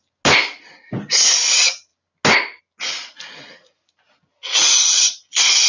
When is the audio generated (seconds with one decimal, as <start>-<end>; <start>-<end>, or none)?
none